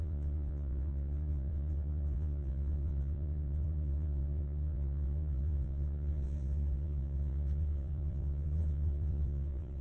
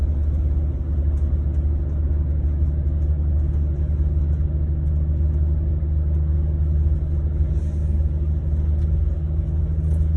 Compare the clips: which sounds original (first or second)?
second